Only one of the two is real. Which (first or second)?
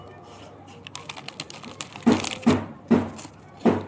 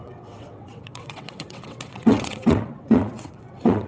first